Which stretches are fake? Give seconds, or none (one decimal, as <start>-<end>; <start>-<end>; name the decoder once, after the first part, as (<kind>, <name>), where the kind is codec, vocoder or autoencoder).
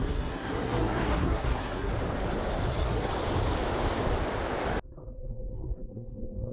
0.0-1.9 (codec, SNAC); 2.7-3.1; 4.8-6.5